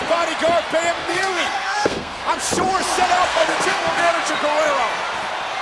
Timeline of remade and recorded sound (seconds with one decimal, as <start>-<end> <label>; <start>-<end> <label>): 0.0-1.0 recorded; 1.0-2.2 remade; 2.2-3.3 recorded; 3.3-4.3 remade; 4.3-5.6 recorded